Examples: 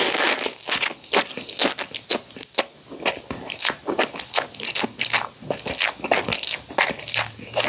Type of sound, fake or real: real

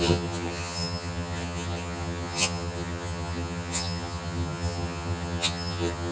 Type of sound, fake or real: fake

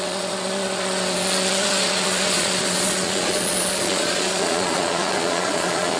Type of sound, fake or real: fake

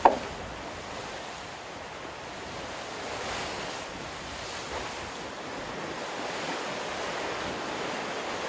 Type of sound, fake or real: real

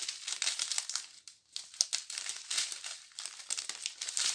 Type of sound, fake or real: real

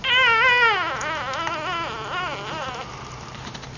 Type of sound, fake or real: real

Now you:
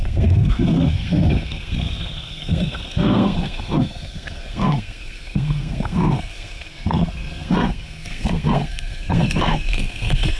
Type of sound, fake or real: fake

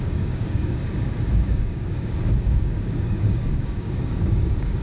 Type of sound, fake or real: fake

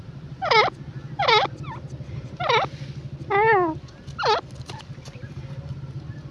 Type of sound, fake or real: real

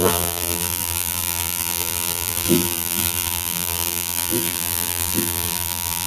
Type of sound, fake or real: fake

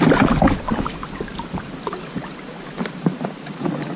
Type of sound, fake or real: real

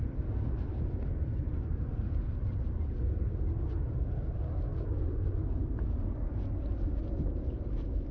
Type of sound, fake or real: real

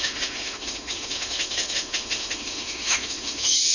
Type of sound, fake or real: fake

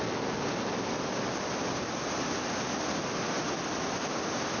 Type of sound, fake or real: real